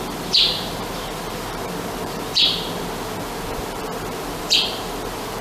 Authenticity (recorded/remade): remade